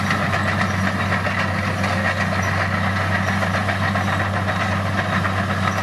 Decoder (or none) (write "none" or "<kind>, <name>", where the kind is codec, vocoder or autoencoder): none